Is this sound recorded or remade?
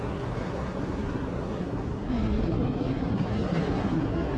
remade